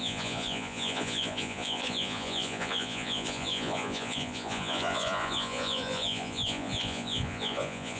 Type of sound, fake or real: fake